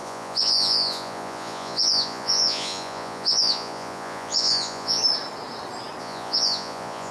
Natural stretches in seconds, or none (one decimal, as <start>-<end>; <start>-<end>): 5.0-6.0